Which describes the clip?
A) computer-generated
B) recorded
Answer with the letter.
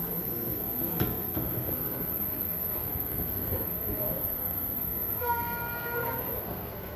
A